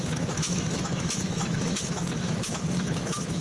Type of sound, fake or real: fake